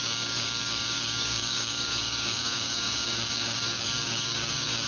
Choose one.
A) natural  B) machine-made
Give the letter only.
B